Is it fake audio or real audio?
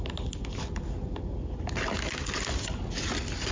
real